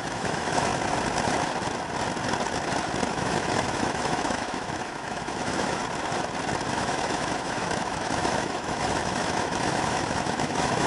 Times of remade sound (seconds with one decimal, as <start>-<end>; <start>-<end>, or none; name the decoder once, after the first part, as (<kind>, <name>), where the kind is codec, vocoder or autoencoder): 0.0-0.7 (autoencoder, DAC-VAE); 3.1-5.8; 6.7-10.9